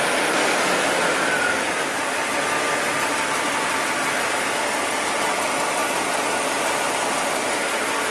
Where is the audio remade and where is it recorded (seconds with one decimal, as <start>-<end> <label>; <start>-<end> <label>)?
0.0-8.1 recorded